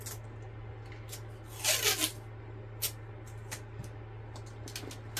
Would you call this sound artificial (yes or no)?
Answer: no